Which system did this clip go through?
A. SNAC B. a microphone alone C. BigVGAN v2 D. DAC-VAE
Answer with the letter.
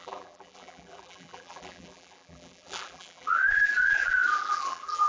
C